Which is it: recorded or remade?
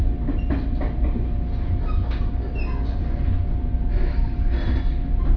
recorded